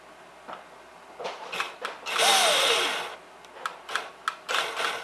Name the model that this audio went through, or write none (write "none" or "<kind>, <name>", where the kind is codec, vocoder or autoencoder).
none